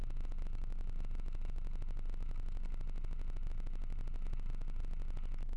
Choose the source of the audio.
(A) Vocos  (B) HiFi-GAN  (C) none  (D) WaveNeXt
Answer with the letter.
C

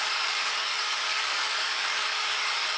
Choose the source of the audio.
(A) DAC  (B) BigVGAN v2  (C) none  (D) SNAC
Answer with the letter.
A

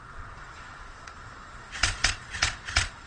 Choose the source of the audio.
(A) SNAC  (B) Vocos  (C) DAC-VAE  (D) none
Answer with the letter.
B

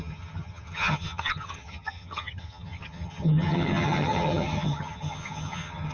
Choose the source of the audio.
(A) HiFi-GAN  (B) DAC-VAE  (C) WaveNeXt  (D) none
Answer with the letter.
A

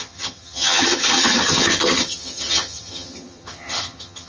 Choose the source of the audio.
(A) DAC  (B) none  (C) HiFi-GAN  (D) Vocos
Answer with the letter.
C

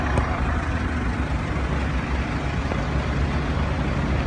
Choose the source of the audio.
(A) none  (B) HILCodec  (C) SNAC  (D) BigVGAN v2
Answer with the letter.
A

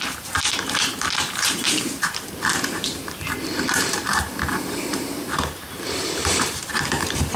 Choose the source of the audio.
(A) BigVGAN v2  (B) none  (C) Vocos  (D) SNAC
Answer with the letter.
A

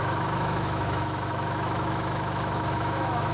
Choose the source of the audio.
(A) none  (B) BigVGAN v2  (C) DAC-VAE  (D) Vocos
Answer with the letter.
C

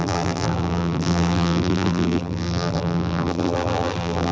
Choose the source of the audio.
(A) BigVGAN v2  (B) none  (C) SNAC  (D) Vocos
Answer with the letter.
A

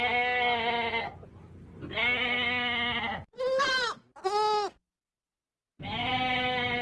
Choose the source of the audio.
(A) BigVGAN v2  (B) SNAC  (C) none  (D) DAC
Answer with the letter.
C